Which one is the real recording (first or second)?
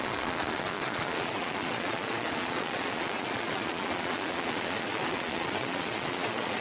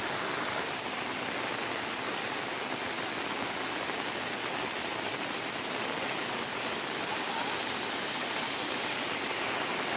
second